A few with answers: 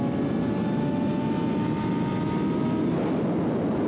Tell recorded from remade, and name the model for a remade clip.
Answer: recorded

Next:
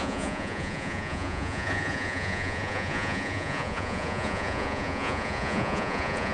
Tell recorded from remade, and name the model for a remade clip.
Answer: remade, vocoder, Vocos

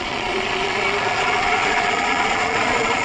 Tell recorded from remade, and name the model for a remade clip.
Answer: remade, vocoder, Vocos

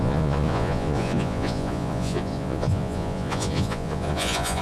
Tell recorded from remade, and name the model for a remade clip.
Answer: remade, vocoder, Vocos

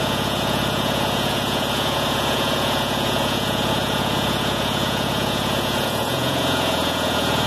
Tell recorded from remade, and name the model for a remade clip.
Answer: remade, vocoder, Vocos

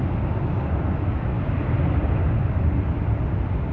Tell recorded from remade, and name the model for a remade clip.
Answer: recorded